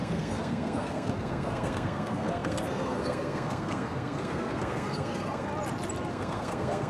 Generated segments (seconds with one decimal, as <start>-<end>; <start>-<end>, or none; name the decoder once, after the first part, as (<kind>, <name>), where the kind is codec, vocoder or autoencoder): 0.0-5.5 (codec, SNAC); 6.1-6.9